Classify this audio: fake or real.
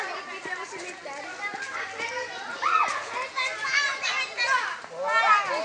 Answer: real